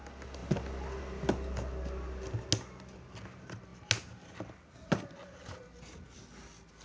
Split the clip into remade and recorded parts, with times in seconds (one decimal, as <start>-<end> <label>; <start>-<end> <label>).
0.0-6.8 recorded